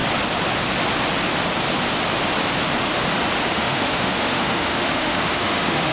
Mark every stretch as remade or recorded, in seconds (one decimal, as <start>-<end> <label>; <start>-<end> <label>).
0.0-3.5 recorded; 3.5-5.9 remade